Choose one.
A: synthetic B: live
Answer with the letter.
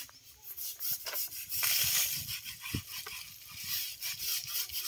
B